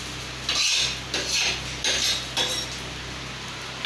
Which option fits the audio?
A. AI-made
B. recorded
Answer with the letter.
B